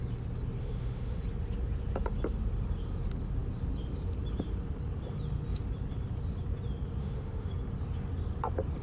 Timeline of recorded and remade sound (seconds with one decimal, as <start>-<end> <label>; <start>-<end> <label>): 0.0-0.6 recorded; 0.6-1.2 remade; 1.2-7.0 recorded; 7.0-7.5 remade; 7.5-8.8 recorded